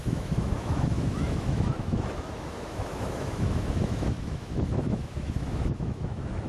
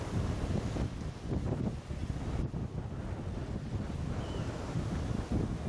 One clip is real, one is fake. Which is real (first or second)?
second